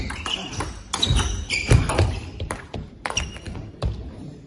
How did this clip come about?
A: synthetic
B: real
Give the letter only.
A